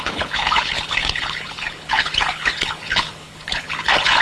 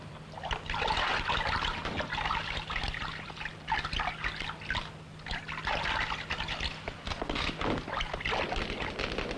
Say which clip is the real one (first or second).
second